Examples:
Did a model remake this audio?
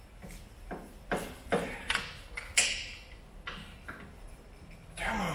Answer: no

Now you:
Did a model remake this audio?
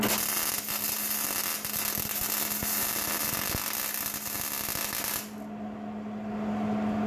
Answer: no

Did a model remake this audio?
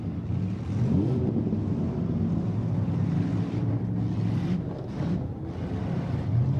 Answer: no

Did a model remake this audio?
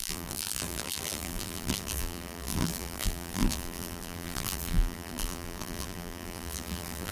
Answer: yes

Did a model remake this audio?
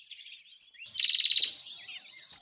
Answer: no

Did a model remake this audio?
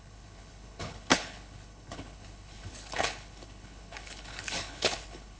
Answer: yes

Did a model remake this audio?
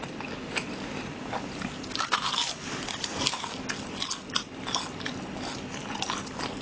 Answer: no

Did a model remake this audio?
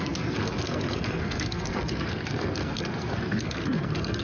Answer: yes